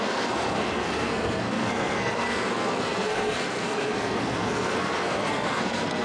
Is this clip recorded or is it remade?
remade